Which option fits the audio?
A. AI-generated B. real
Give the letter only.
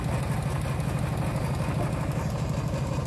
B